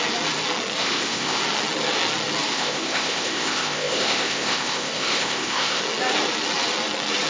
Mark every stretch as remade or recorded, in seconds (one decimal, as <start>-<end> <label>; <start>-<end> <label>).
0.0-0.8 recorded; 0.8-1.4 remade; 1.4-2.5 recorded; 2.5-5.8 remade; 5.8-7.3 recorded